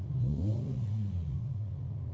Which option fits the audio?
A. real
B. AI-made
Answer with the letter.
B